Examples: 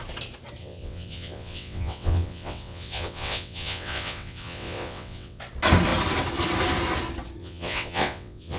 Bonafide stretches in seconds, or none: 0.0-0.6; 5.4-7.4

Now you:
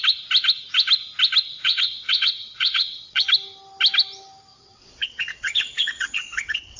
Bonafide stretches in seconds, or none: 0.0-1.5; 3.2-4.5

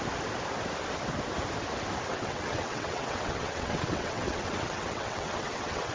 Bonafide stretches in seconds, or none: 0.0-2.1